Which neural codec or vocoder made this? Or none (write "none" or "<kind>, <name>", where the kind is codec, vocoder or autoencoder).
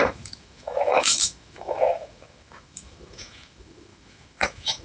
autoencoder, DAC-VAE